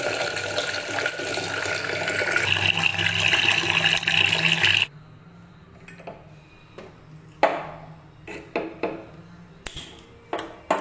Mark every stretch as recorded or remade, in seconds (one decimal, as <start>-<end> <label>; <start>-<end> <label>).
0.0-10.8 recorded